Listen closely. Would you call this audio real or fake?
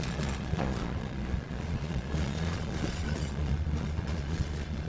fake